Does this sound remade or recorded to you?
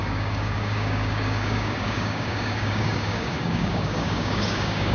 remade